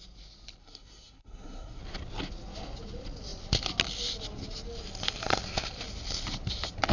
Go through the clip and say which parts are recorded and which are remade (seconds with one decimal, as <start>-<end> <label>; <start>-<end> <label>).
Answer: 0.0-0.6 recorded; 0.6-1.8 remade; 1.8-6.9 recorded